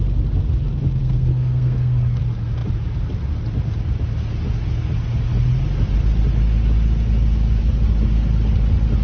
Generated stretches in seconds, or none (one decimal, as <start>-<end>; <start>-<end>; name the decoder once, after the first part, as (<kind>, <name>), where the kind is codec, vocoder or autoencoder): 1.0-2.2 (codec, SNAC)